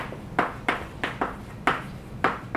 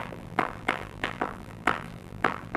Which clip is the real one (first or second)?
first